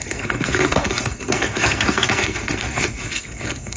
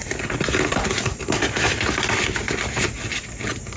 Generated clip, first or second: first